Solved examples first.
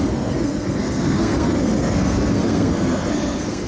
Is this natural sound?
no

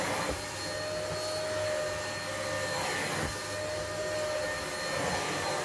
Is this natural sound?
yes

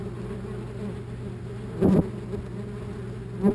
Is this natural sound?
yes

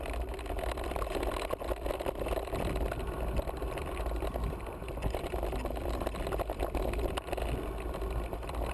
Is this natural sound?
yes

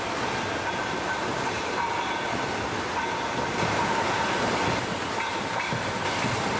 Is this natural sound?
yes